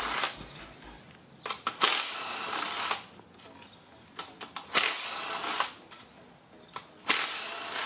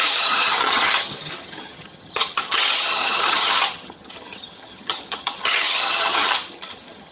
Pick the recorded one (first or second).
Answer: first